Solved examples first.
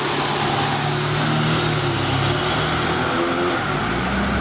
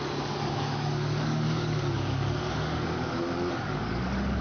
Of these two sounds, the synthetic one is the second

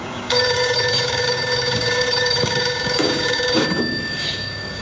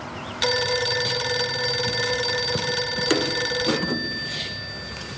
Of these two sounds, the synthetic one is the first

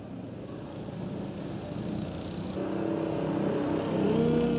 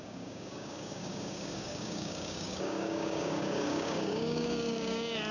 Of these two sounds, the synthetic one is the second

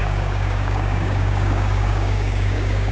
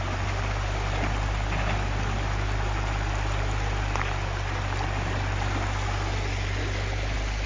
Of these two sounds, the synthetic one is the first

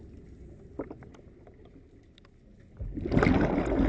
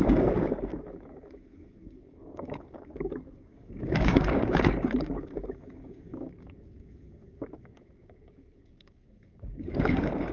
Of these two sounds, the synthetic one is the second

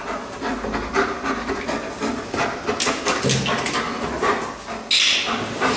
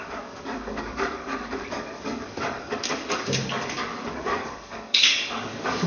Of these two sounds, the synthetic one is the second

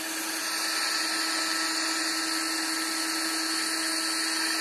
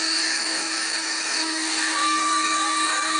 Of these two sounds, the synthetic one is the second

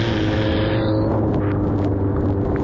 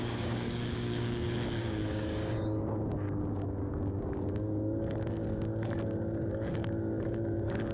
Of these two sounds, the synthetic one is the second